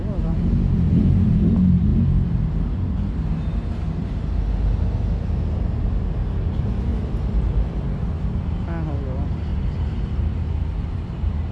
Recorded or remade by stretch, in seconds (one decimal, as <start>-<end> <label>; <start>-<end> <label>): 0.0-1.9 remade; 1.9-6.5 recorded; 6.5-6.9 remade; 6.9-8.9 recorded; 8.9-11.5 remade